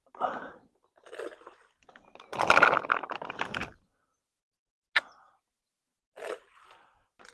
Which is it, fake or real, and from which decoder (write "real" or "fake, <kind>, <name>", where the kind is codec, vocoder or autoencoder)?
real